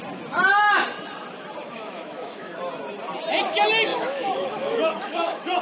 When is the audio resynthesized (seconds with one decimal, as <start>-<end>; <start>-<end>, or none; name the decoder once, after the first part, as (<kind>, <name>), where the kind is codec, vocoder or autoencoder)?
1.6-2.5 (autoencoder, DAC-VAE); 3.9-5.6